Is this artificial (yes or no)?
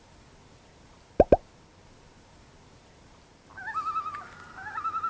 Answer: no